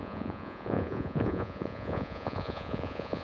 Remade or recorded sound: remade